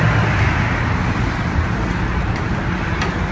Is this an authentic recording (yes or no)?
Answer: yes